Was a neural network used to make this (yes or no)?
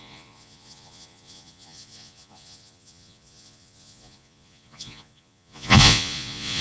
yes